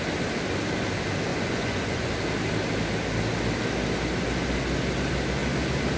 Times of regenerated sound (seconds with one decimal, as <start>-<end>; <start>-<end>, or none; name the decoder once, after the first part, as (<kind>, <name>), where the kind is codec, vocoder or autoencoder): 1.3-2.1 (vocoder, Vocos)